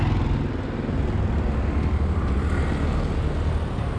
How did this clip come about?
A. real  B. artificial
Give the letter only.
A